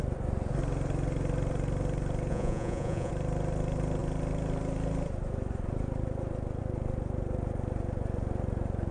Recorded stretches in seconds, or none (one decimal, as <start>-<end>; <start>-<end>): 0.0-2.3; 3.1-8.9